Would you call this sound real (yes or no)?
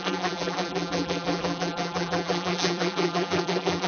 no